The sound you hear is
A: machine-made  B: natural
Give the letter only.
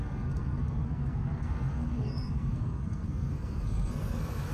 A